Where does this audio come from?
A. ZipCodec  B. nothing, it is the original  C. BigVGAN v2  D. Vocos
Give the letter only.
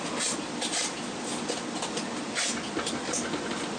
B